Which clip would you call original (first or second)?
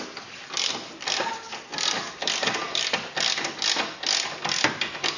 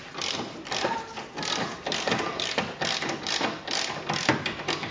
first